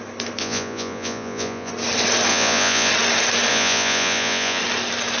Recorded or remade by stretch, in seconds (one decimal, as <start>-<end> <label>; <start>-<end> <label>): 0.0-0.4 recorded; 0.4-1.7 remade; 1.7-2.3 recorded; 2.3-2.9 remade; 2.9-3.5 recorded; 3.5-4.6 remade; 4.6-5.2 recorded

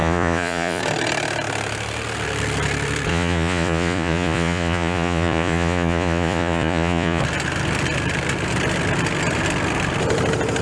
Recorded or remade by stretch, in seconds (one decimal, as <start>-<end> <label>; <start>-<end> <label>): 0.0-0.8 remade; 0.8-3.1 recorded; 3.1-7.2 remade; 7.2-10.6 recorded

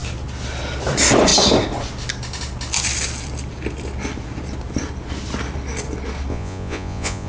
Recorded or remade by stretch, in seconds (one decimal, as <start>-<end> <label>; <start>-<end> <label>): 0.0-6.3 recorded; 6.3-7.3 remade

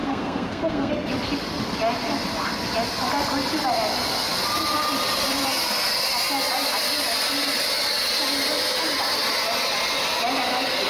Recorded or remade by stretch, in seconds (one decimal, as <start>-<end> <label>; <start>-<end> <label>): 0.0-0.9 remade; 0.9-10.9 recorded